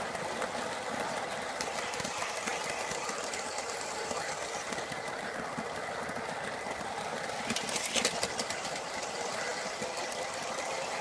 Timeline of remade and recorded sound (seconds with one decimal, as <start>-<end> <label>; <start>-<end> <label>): 0.0-11.0 recorded